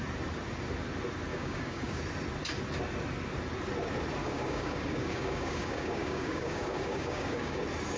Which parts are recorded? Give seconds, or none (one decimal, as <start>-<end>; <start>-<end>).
0.0-1.3; 2.0-4.2; 7.6-8.0